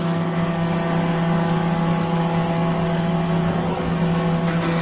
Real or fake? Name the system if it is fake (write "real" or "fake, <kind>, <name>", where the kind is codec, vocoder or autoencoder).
fake, codec, DAC